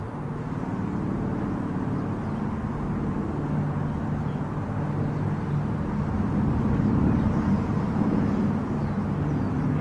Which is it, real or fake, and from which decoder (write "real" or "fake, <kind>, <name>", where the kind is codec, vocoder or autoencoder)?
real